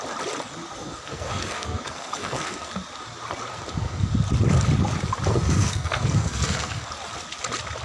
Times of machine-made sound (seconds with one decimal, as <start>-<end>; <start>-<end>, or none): 0.8-2.7; 3.5-4.1; 5.3-6.9